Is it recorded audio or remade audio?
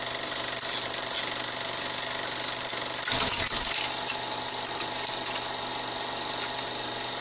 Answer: recorded